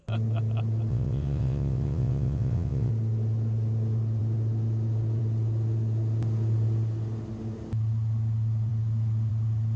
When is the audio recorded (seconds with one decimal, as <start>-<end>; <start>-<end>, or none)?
0.0-0.9; 2.9-9.8